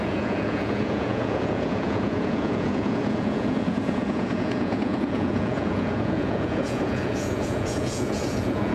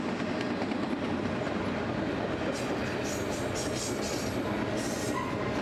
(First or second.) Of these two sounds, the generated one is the first